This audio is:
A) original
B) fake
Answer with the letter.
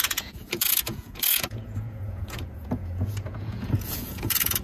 B